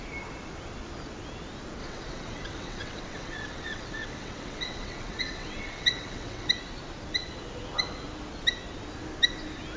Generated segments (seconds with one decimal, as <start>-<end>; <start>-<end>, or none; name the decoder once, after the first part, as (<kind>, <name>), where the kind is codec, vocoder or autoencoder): 1.8-6.5 (vocoder, WaveNeXt)